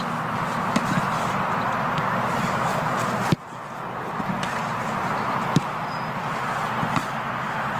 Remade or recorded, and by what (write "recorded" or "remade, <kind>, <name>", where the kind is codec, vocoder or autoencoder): recorded